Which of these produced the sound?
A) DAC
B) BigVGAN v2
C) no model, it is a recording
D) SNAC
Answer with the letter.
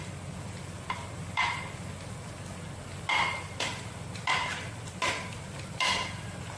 C